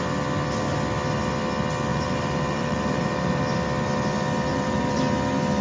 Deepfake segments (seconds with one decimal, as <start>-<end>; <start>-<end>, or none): 1.9-3.4; 4.5-5.0